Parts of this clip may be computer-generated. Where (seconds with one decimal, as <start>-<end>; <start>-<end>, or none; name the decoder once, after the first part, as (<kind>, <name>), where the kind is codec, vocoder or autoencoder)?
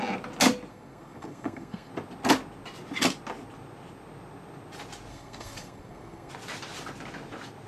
0.7-1.9 (codec, SNAC); 5.1-6.3